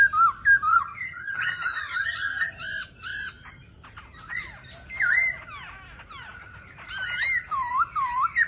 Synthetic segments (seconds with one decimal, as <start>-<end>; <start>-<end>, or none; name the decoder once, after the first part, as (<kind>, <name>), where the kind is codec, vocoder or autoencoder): 0.7-2.5 (vocoder, HiFi-GAN)